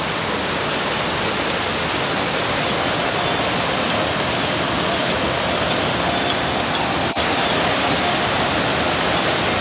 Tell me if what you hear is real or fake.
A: real